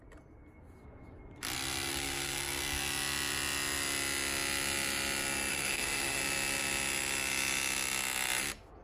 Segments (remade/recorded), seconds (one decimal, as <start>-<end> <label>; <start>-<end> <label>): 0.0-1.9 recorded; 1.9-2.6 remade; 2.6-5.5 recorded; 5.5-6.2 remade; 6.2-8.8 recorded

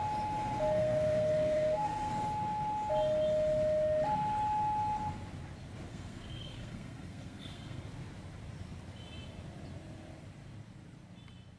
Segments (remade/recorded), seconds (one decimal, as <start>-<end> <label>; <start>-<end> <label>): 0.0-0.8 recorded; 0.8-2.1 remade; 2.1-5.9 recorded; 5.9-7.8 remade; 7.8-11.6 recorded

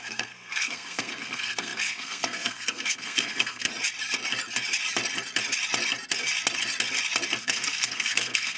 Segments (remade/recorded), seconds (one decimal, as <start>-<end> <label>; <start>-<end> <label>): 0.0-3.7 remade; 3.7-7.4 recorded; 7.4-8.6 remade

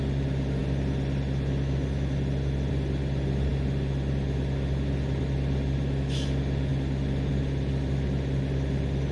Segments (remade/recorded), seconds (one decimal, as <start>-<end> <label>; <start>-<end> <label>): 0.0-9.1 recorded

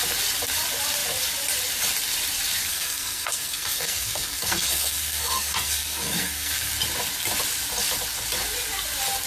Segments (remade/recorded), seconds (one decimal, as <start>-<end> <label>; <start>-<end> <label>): 0.0-2.7 recorded; 2.7-6.7 remade; 6.7-9.3 recorded

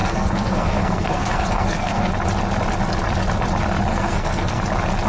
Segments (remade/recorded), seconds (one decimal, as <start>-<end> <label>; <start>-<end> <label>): 0.0-2.1 remade; 2.1-3.9 recorded; 3.9-4.6 remade; 4.6-5.1 recorded